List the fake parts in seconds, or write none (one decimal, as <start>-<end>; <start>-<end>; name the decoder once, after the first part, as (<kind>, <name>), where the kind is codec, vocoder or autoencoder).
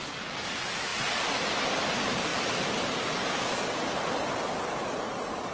none